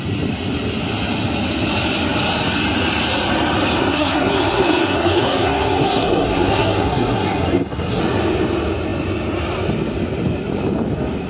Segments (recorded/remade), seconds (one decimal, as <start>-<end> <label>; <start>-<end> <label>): 0.0-3.8 recorded; 3.8-8.0 remade; 8.0-11.3 recorded